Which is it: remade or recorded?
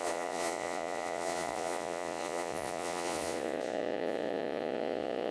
remade